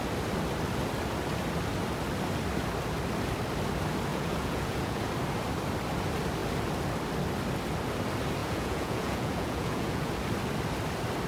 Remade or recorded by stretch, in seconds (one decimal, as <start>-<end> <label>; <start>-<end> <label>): 0.0-4.1 recorded; 4.1-5.1 remade; 5.1-8.4 recorded; 8.4-10.1 remade; 10.1-11.3 recorded